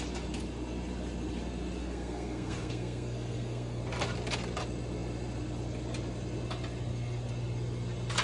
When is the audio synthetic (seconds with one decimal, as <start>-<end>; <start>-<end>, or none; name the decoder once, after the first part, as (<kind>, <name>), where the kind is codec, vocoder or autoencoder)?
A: 1.8-3.8 (codec, SNAC)